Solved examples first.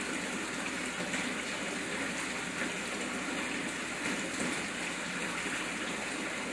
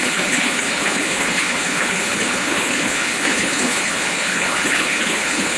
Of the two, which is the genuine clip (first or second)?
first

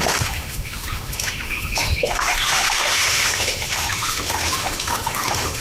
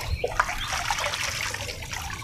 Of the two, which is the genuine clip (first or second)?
second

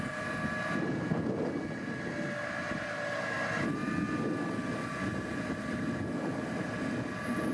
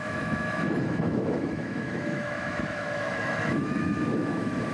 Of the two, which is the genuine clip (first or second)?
first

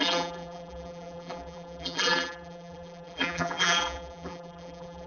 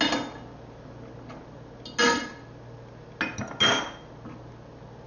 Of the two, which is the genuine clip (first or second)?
second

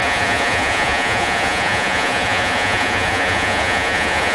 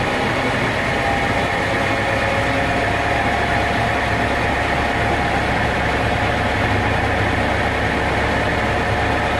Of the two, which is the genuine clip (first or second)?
second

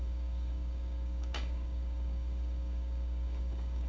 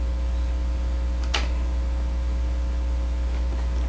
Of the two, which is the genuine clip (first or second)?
second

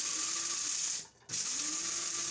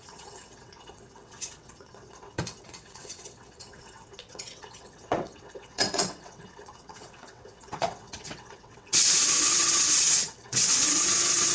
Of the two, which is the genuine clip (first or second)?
first